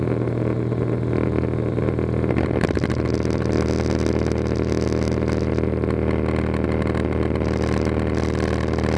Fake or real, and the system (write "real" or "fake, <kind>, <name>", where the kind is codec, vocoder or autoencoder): real